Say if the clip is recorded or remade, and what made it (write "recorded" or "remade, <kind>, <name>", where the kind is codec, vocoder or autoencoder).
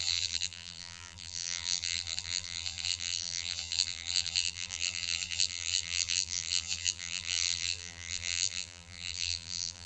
remade, vocoder, BigVGAN v2